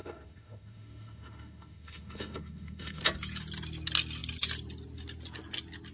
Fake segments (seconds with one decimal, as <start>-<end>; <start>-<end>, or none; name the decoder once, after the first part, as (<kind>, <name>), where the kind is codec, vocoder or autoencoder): 0.0-3.0 (autoencoder, DAC-VAE)